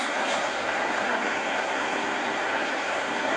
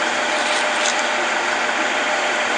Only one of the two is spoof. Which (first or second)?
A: first